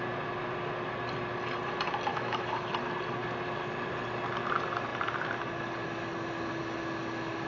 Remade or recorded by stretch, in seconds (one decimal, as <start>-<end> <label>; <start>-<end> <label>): 0.0-2.1 recorded; 2.1-2.7 remade; 2.7-7.5 recorded